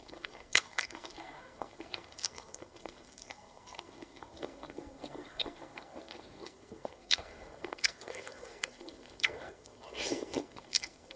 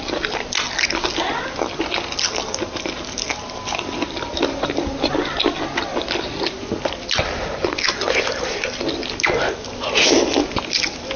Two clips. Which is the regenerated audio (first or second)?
first